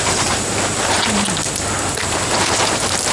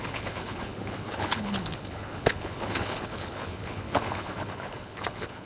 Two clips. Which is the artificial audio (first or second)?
second